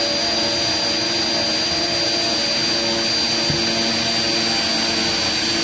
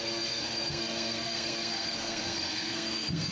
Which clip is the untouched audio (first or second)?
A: first